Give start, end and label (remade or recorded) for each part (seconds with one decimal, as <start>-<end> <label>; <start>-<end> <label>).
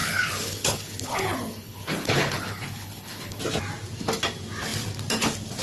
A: 0.0-3.4 remade; 3.4-5.6 recorded